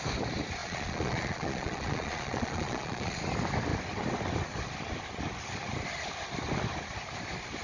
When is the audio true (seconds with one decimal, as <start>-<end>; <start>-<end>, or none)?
0.0-0.6; 3.2-7.6